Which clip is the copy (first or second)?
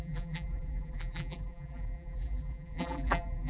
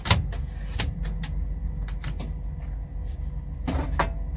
first